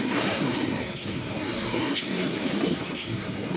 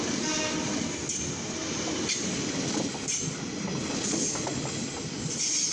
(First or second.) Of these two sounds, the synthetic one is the first